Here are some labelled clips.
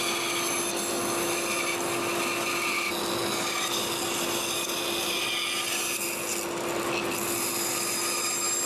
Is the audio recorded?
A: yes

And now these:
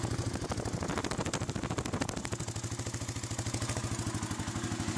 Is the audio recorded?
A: yes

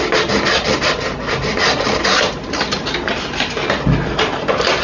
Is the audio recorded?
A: yes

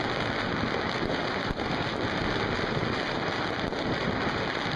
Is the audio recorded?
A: yes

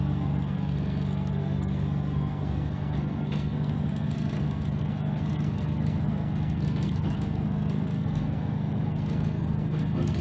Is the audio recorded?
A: no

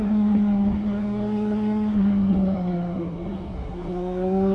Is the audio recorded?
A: no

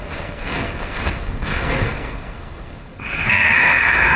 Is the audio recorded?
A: no